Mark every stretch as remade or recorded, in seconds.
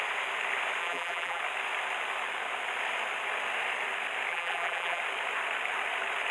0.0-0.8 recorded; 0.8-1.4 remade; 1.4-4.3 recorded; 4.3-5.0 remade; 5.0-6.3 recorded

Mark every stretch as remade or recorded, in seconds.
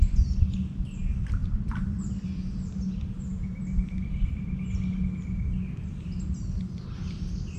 0.0-1.4 recorded; 1.4-1.9 remade; 1.9-7.6 recorded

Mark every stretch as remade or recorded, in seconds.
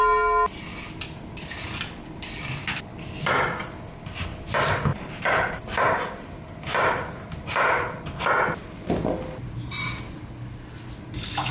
0.0-4.9 recorded; 4.9-8.0 remade; 8.0-11.5 recorded